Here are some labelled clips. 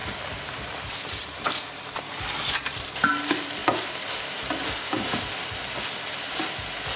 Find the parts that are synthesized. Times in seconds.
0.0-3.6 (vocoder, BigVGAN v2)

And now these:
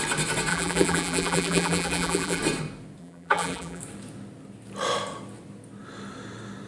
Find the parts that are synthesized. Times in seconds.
0.5-2.4 (vocoder, BigVGAN v2); 3.0-3.8

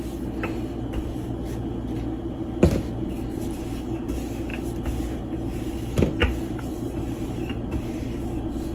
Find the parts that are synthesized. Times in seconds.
6.2-7.9 (vocoder, BigVGAN v2)

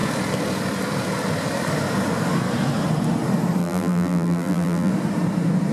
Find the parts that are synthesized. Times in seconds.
3.6-4.9 (vocoder, BigVGAN v2)

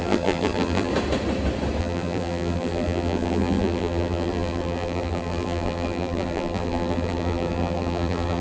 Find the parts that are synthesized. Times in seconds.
0.0-0.9 (vocoder, BigVGAN v2); 1.8-8.4

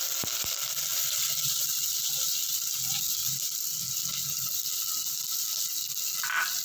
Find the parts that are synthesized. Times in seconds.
0.9-4.7 (vocoder, BigVGAN v2)

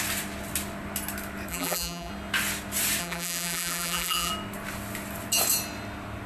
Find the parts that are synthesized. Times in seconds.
1.5-2.1 (vocoder, BigVGAN v2); 3.0-4.3

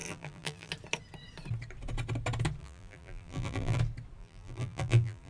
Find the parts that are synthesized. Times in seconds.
0.0-0.7 (vocoder, BigVGAN v2); 2.6-3.8; 4.2-5.3